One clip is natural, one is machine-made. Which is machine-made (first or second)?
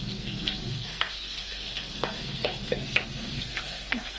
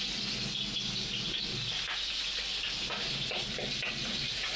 first